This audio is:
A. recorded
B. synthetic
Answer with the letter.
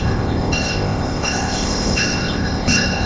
B